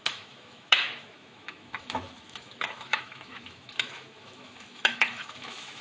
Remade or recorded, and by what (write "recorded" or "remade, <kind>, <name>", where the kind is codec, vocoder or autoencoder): remade, autoencoder, DAC-VAE